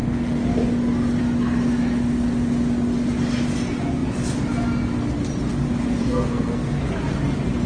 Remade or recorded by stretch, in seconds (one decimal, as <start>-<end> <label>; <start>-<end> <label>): 0.0-6.0 recorded; 6.0-6.8 remade; 6.8-7.7 recorded